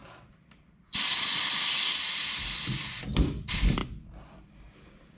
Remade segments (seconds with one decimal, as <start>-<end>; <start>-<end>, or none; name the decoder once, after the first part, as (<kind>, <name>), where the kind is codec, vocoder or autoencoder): 0.0-1.7 (vocoder, BigVGAN v2); 3.8-4.5